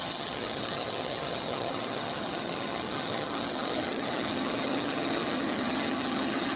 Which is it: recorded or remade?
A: remade